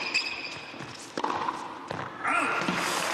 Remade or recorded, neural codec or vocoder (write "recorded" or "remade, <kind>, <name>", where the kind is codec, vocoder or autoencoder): recorded